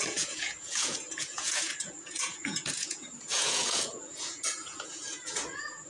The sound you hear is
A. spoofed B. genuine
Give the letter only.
A